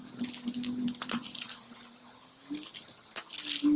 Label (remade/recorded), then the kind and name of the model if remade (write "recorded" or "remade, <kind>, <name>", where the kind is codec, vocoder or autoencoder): recorded